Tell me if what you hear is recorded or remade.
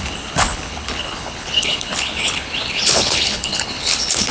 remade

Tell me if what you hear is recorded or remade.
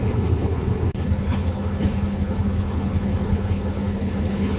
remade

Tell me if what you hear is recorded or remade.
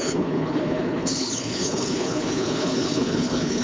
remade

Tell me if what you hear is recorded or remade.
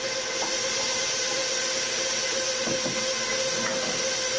recorded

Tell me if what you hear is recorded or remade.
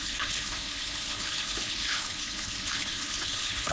remade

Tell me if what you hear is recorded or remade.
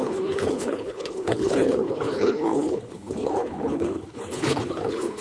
remade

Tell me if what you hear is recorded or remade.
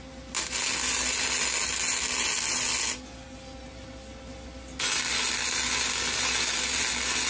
recorded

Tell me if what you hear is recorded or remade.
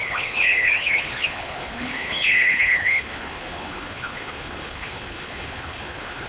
remade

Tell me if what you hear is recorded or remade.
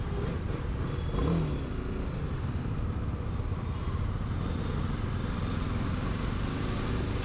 recorded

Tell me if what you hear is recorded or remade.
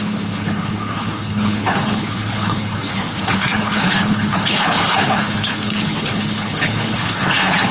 remade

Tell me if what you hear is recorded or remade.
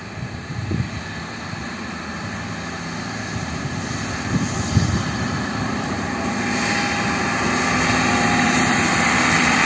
recorded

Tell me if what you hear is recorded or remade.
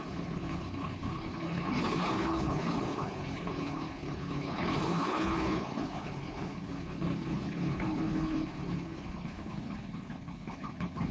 remade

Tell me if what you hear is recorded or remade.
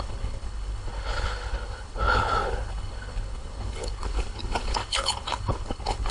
remade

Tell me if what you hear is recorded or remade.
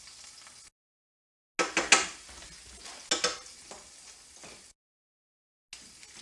recorded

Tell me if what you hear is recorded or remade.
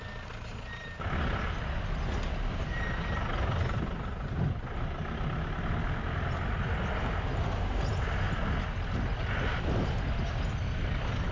recorded